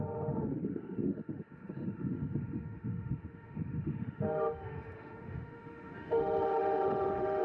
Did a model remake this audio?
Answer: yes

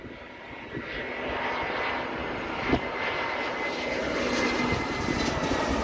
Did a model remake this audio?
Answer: no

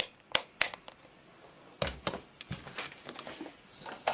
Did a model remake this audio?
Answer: no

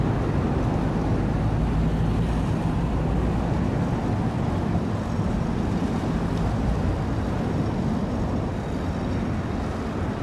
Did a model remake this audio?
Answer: no